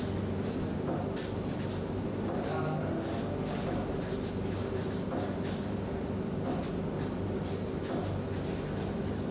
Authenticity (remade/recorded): recorded